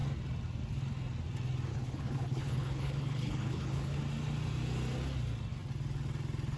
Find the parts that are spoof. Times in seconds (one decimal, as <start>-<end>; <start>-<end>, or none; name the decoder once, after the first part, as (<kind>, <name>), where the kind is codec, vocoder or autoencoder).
1.7-4.0 (codec, HILCodec)